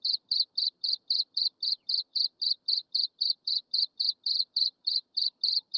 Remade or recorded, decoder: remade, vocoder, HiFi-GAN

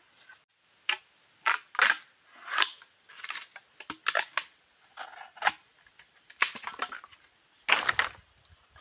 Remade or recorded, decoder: recorded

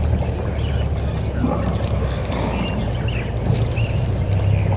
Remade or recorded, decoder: recorded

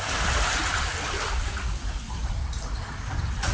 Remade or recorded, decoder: recorded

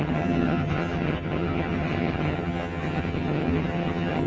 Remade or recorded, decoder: remade, vocoder, HiFi-GAN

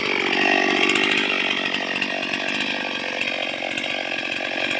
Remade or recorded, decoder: recorded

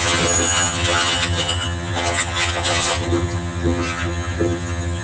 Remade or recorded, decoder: remade, vocoder, HiFi-GAN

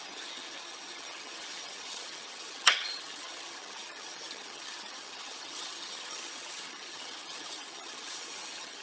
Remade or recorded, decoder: remade, vocoder, HiFi-GAN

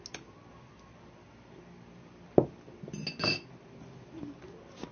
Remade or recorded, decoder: recorded